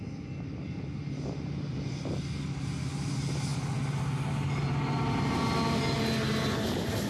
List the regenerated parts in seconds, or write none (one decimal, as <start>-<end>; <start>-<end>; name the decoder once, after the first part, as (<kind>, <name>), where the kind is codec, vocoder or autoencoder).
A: none